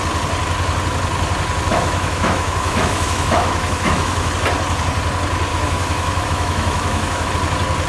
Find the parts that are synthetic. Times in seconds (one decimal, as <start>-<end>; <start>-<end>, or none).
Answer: 1.7-4.3; 5.5-7.3